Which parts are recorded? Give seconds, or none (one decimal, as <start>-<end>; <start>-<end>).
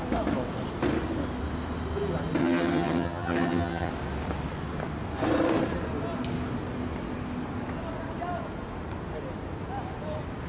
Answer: 0.0-2.4; 3.9-10.5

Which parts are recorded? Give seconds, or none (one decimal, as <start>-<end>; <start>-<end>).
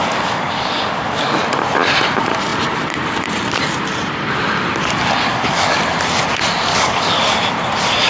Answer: 1.4-5.3; 5.8-6.7; 7.2-8.1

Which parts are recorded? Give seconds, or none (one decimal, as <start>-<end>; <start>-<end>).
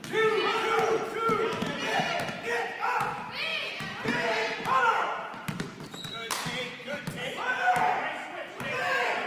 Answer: 0.0-9.3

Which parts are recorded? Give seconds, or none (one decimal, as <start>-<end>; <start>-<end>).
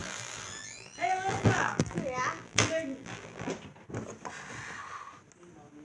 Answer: 3.5-5.8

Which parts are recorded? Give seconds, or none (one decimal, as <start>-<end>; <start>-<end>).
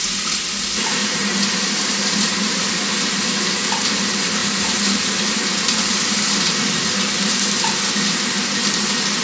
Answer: 0.0-1.0; 2.9-4.4; 7.3-9.2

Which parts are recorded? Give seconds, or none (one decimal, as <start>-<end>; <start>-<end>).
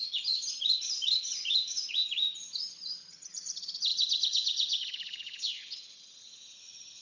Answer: none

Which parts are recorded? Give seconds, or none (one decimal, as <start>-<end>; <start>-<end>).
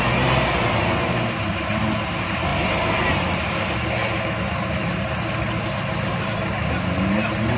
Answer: 0.0-7.6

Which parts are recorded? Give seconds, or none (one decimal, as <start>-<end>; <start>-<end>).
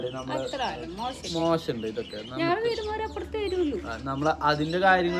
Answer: 0.0-5.2